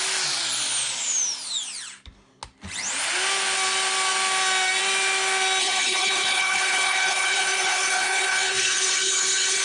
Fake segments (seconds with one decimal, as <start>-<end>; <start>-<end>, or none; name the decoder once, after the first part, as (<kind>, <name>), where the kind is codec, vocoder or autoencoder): 5.6-9.6 (codec, HILCodec)